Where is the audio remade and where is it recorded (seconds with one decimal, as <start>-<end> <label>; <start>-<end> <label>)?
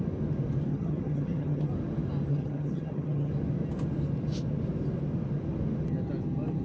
0.0-0.7 recorded; 0.7-1.7 remade; 1.7-2.3 recorded; 2.3-3.3 remade; 3.3-6.6 recorded